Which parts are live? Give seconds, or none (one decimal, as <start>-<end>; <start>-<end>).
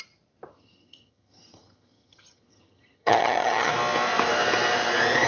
0.0-0.5; 3.7-5.3